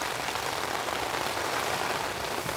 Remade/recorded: recorded